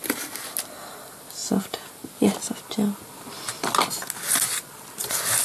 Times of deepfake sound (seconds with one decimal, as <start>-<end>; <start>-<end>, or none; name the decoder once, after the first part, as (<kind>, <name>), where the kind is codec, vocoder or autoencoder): 1.4-1.9 (vocoder, Vocos)